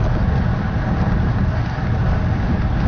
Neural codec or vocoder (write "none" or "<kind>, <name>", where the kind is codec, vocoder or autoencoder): none